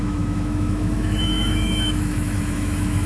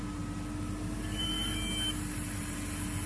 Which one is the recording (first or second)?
second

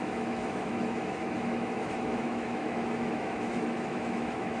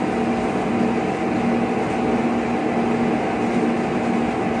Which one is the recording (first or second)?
second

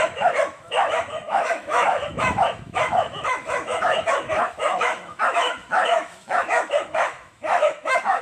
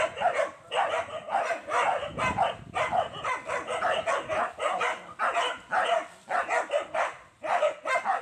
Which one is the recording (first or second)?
second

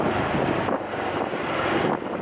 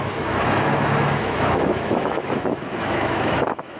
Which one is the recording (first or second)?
first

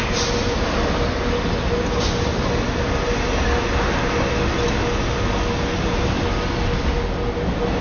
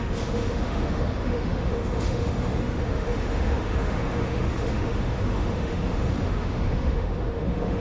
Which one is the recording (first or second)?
first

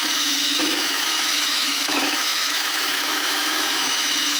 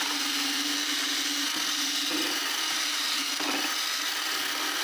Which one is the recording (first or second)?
second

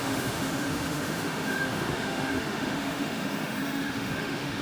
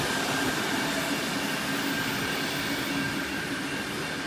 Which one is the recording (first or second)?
second